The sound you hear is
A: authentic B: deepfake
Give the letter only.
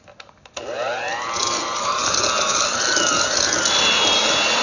A